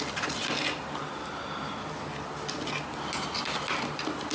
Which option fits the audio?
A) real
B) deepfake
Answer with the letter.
A